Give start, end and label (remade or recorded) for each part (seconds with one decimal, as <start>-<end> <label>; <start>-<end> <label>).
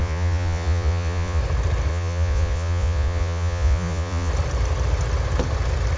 0.0-1.4 remade; 1.4-1.9 recorded; 1.9-4.3 remade; 4.3-6.0 recorded